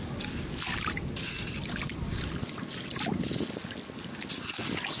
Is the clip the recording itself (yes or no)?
yes